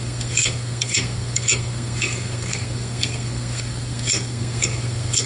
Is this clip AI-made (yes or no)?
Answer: yes